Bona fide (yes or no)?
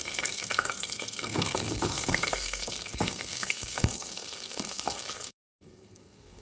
no